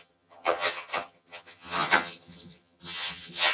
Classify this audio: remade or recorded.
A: remade